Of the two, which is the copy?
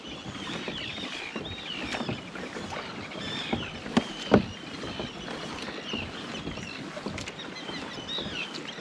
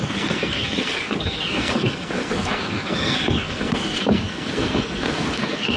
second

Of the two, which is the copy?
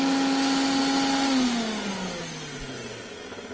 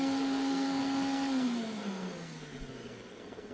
second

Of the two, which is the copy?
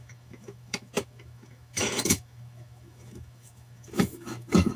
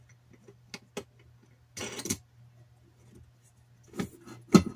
first